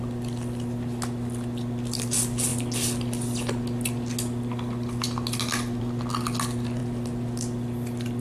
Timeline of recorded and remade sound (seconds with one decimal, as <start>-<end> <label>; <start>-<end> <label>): 0.0-8.2 recorded